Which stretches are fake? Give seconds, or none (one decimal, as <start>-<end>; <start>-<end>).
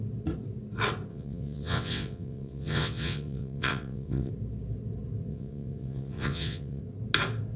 1.1-4.3; 5.3-6.8